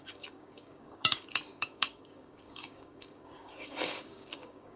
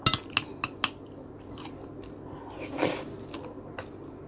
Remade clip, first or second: first